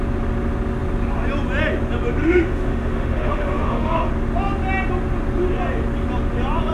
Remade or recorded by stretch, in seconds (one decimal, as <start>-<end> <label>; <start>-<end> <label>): 0.0-2.2 recorded; 2.2-4.1 remade; 4.1-6.7 recorded

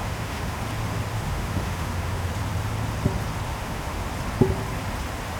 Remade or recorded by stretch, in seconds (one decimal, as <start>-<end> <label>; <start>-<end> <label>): 0.0-0.6 remade; 0.6-1.1 recorded; 1.1-2.3 remade; 2.3-3.5 recorded; 3.5-4.1 remade; 4.1-5.4 recorded

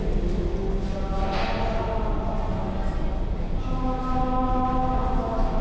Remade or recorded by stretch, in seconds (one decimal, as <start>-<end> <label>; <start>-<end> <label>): 0.0-5.6 recorded

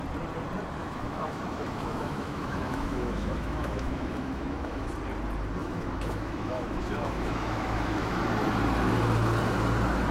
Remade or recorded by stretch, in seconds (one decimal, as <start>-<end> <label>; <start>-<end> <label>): 0.0-0.8 recorded; 0.8-4.9 remade; 4.9-5.6 recorded; 5.6-8.2 remade; 8.2-10.1 recorded